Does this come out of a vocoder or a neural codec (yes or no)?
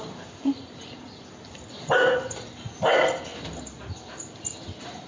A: yes